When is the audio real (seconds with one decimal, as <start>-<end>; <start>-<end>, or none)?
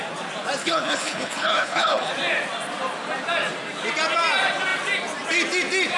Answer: 0.0-0.6; 2.1-6.0